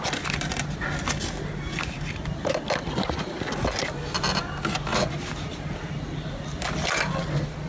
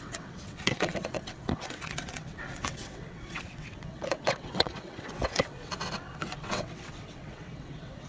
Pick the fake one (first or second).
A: second